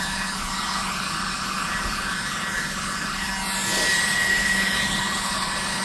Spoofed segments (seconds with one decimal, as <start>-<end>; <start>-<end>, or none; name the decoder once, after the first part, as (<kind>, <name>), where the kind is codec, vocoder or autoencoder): 0.0-3.3 (codec, HILCodec); 3.9-5.8